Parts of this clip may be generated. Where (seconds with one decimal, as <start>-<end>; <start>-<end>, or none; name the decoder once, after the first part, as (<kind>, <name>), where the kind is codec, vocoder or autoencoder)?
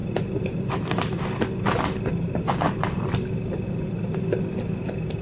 none